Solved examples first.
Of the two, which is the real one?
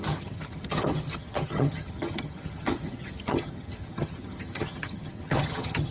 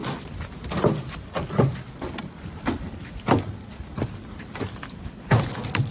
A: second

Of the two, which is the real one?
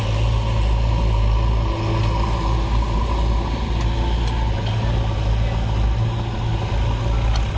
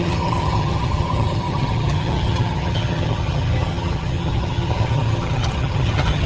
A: first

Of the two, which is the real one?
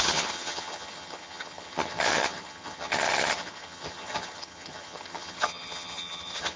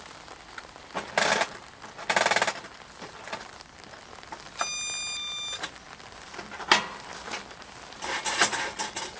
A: second